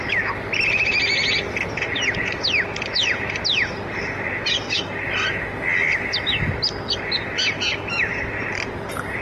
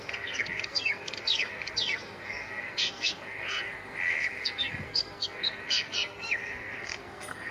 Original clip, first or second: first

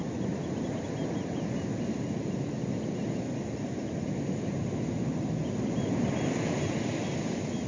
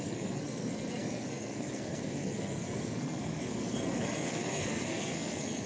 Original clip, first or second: first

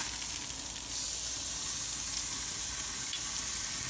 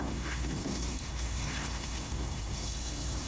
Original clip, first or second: first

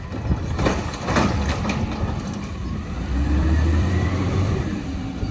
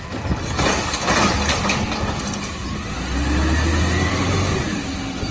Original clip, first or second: second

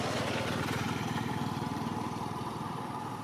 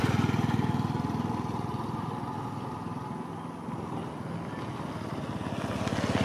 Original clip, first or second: second